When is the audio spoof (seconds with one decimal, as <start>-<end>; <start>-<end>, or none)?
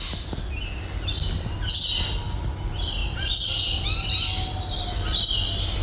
3.0-4.1